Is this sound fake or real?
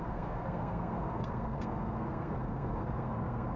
fake